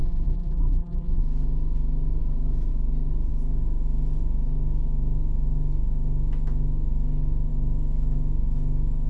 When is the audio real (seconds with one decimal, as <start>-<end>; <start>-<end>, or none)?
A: 1.2-9.1